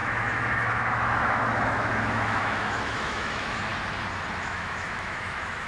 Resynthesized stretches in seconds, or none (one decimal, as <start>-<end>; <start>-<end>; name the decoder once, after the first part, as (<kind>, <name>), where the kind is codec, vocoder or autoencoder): 0.0-3.7 (autoencoder, DAC-VAE); 4.4-5.7